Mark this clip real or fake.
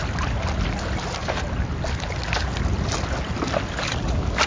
real